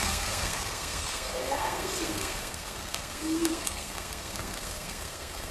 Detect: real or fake fake